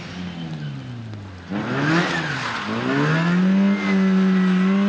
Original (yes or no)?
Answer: yes